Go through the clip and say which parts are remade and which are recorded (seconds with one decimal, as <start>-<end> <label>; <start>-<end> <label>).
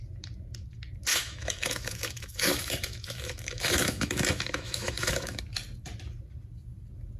0.0-1.1 recorded; 1.1-5.4 remade; 5.4-7.2 recorded